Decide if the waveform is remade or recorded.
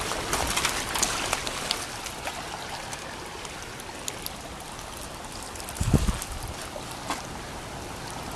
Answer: recorded